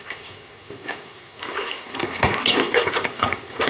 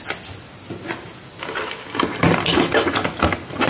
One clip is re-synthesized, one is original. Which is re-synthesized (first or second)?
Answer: first